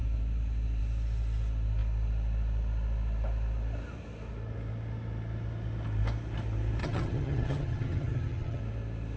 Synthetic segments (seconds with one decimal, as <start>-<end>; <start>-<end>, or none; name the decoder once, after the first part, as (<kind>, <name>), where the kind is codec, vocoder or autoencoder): 6.8-8.6 (vocoder, HiFi-GAN)